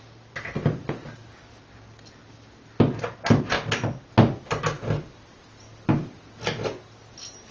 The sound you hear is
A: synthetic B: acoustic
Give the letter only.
B